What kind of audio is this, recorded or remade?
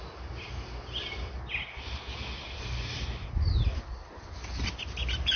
recorded